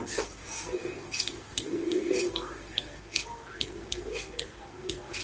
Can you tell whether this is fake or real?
fake